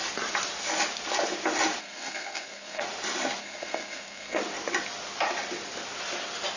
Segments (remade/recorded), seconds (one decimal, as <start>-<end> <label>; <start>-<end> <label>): 0.0-1.8 recorded; 1.8-2.8 remade; 2.8-3.4 recorded; 3.4-4.4 remade; 4.4-6.6 recorded